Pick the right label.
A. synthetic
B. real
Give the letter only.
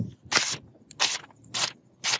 B